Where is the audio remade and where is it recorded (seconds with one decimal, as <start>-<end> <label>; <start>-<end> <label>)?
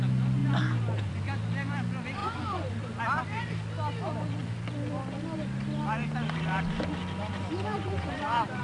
0.0-2.2 recorded; 2.2-3.0 remade; 3.0-4.4 recorded; 4.4-8.6 remade